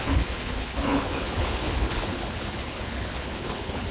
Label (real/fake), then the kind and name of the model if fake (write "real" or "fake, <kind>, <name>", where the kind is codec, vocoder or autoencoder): fake, codec, HILCodec